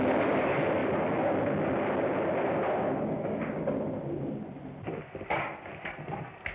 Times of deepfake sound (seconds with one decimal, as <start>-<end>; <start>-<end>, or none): 3.2-3.8